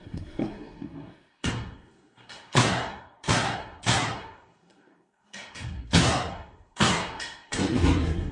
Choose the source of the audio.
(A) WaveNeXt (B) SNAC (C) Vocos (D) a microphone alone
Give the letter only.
B